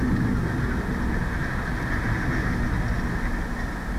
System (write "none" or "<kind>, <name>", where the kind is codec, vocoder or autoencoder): none